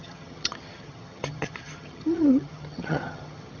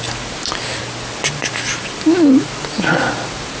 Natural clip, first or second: second